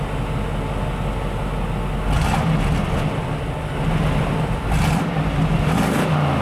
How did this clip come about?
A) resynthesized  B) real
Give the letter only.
B